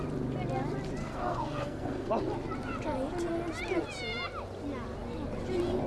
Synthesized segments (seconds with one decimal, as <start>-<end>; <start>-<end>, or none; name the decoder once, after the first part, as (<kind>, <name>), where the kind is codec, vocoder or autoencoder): 1.0-2.1 (codec, SNAC)

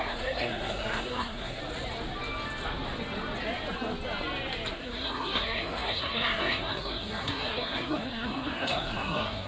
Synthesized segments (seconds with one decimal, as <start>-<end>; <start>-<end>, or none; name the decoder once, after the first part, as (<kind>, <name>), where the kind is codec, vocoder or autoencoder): 0.0-1.6 (codec, SNAC); 4.7-9.5

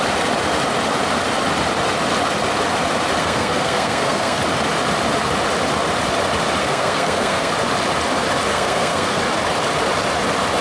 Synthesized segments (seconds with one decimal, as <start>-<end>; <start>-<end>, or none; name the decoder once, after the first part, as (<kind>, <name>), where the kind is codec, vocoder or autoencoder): 3.2-4.4 (codec, SNAC); 6.6-7.5; 8.5-9.2

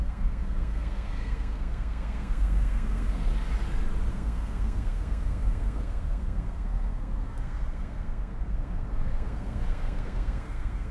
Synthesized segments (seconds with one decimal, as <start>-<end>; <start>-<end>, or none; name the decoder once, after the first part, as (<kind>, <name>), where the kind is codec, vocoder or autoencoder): 0.0-3.3 (codec, SNAC); 4.1-10.9

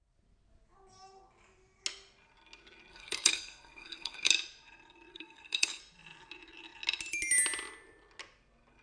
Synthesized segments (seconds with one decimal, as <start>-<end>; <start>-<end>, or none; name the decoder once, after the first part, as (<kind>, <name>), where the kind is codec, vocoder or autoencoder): 2.9-4.3 (codec, SNAC); 5.1-5.8

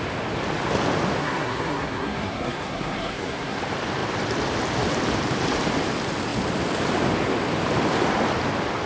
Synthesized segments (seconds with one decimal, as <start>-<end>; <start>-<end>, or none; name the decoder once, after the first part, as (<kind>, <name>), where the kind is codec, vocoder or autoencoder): 1.2-3.6 (codec, SNAC)

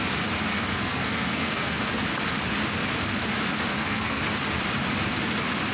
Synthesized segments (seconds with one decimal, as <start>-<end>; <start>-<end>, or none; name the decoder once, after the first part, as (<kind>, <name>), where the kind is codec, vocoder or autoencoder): 0.5-1.8 (codec, SNAC); 3.7-4.2

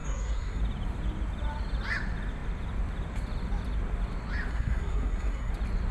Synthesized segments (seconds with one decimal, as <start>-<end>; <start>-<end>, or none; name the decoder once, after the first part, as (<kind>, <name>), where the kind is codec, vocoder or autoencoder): 0.0-0.6 (codec, SNAC); 4.5-5.5